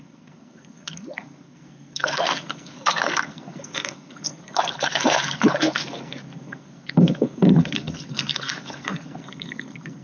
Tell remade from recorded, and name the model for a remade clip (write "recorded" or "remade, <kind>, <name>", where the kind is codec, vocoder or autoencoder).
remade, codec, SNAC